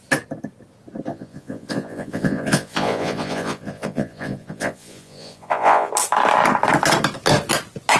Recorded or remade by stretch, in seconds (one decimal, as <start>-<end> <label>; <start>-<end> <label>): 0.0-1.1 recorded; 1.1-5.9 remade; 5.9-8.0 recorded